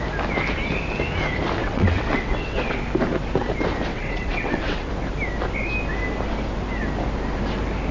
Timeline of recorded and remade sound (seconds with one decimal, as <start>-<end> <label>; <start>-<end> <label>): 0.0-1.6 recorded; 1.6-2.8 remade; 2.8-3.9 recorded; 3.9-4.9 remade; 4.9-7.9 recorded